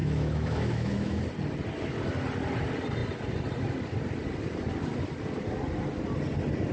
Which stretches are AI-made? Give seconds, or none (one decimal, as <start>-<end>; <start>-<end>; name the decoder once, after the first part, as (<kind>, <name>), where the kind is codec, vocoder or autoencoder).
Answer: 0.0-1.2 (autoencoder, DAC-VAE)

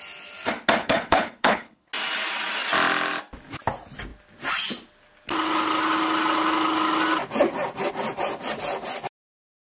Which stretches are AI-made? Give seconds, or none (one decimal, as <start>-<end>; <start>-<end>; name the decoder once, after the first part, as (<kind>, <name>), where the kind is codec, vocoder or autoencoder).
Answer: 0.8-1.9 (codec, HILCodec)

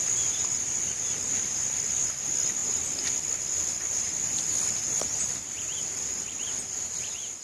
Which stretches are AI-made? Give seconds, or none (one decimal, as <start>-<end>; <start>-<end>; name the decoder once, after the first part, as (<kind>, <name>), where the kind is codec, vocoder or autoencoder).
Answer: none

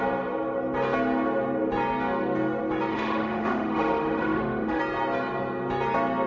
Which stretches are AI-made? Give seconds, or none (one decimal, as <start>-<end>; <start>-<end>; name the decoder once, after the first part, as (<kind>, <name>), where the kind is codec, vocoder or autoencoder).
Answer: 2.9-4.8 (autoencoder, DAC-VAE)

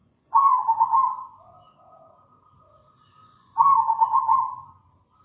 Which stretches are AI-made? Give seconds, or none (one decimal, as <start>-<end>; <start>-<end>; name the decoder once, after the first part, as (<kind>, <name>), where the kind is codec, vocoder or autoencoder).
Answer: 0.0-0.6 (vocoder, Vocos); 3.2-4.8

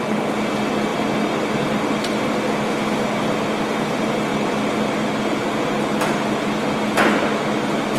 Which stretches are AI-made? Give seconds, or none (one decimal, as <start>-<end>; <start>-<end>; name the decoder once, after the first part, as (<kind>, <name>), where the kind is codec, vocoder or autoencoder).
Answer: none